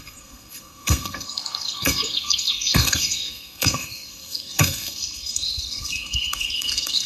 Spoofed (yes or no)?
yes